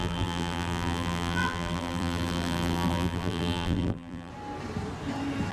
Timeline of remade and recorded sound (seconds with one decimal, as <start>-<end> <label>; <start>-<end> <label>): 0.0-4.3 remade; 4.3-5.5 recorded